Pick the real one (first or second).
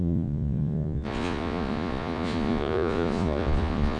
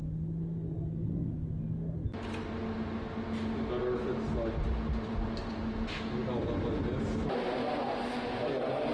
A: second